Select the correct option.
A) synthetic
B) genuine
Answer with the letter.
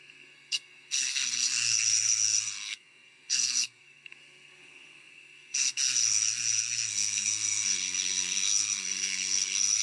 A